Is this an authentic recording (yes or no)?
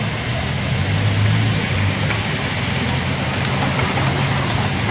yes